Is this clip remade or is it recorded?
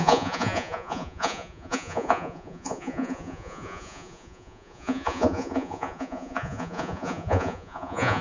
remade